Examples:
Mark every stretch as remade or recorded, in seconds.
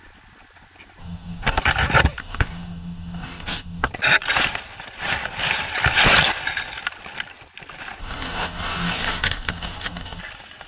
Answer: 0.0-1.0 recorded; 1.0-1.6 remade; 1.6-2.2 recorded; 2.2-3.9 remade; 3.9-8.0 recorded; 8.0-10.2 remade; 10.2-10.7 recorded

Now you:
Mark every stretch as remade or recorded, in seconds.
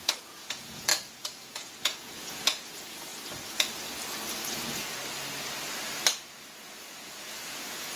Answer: 0.0-3.1 remade; 3.1-4.5 recorded; 4.5-5.0 remade; 5.0-6.9 recorded; 6.9-8.0 remade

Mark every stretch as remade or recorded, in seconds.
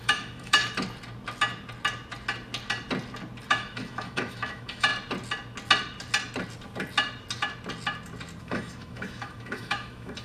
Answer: 0.0-0.6 remade; 0.6-3.5 recorded; 3.5-4.9 remade; 4.9-8.4 recorded; 8.4-10.2 remade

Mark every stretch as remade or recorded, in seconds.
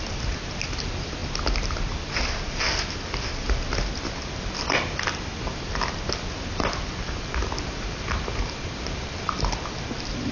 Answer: 0.0-10.3 recorded